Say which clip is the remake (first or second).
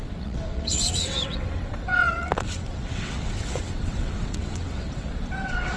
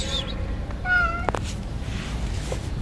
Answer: first